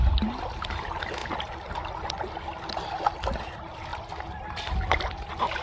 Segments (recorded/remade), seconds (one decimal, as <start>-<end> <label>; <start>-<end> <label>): 0.0-5.6 recorded